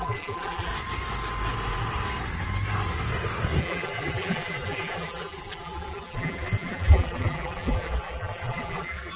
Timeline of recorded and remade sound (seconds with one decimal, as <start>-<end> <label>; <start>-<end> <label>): 0.0-0.7 remade; 0.7-3.6 recorded; 3.6-9.2 remade